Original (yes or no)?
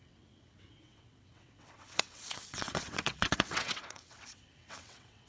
no